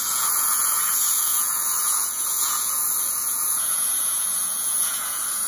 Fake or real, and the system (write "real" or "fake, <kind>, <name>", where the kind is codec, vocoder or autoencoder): fake, vocoder, Vocos